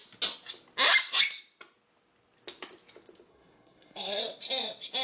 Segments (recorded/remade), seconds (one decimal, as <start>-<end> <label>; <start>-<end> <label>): 0.0-3.3 recorded; 3.3-4.2 remade; 4.2-5.0 recorded